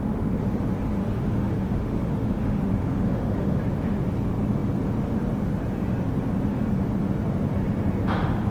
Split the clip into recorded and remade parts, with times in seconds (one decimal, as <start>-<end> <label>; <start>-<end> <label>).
0.0-1.0 recorded; 1.0-3.6 remade; 3.6-8.5 recorded